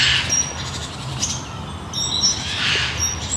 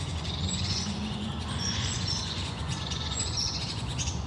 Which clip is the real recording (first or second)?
first